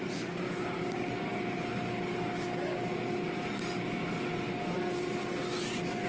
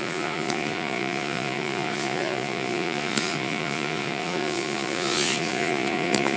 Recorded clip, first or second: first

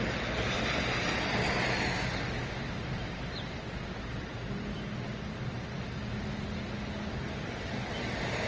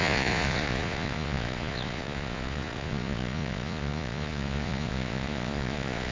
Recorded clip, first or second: first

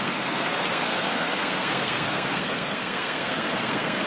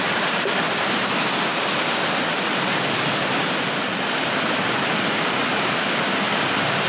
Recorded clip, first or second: second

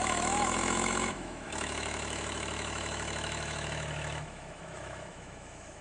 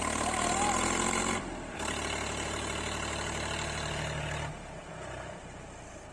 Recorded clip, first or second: second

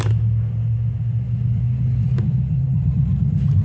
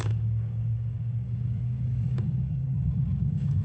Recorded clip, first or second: first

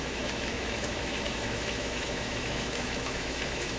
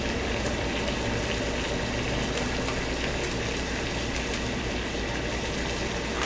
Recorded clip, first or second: second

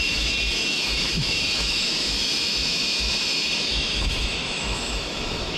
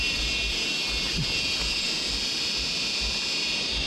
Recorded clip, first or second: second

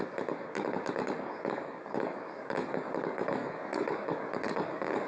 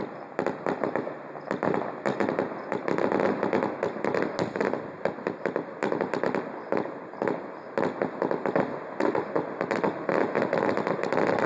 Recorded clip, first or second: second